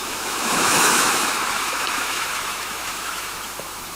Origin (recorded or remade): remade